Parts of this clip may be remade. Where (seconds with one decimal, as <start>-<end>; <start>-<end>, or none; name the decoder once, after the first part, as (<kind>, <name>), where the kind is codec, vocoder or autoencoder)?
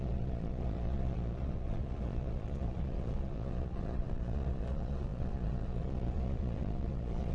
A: 0.0-7.3 (vocoder, Vocos)